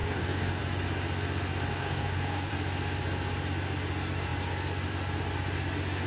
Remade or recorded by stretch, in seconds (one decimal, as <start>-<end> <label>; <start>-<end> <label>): 0.0-0.6 remade; 0.6-1.7 recorded; 1.7-2.5 remade; 2.5-6.1 recorded